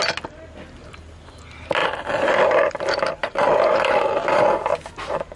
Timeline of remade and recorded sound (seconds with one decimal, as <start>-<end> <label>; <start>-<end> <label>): 0.0-1.8 recorded; 1.8-4.0 remade; 4.0-5.4 recorded